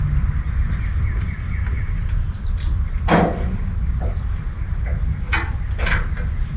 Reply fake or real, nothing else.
real